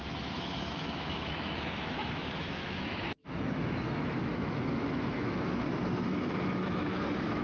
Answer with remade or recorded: remade